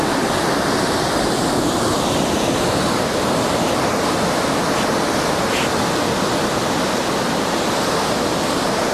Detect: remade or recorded recorded